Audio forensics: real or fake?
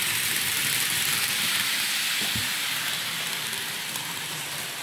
fake